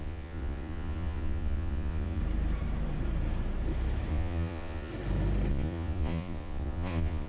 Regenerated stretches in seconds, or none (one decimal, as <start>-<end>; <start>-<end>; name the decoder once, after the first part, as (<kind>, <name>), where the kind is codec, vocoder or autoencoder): 0.0-2.2 (vocoder, Vocos); 4.1-4.9; 5.5-7.3